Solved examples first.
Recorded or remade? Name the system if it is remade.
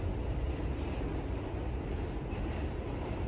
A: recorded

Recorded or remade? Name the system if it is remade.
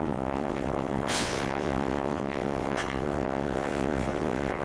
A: remade, vocoder, WaveNeXt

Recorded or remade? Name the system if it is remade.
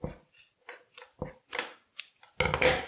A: recorded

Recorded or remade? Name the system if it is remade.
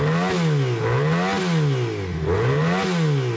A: recorded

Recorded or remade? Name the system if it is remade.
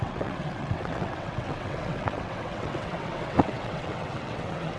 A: remade, vocoder, WaveNeXt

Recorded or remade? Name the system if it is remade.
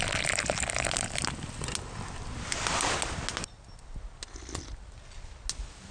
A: recorded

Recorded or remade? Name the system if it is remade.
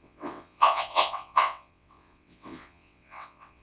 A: remade, vocoder, WaveNeXt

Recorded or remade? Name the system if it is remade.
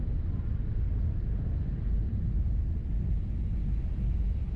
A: recorded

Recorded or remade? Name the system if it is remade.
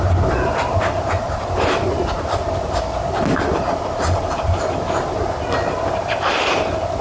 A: recorded